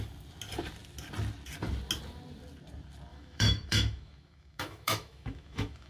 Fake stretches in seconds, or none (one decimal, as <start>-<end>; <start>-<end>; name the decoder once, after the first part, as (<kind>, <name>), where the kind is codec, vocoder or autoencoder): 3.1-5.9 (autoencoder, DAC-VAE)